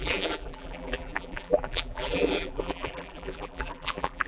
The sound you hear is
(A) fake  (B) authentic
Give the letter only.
A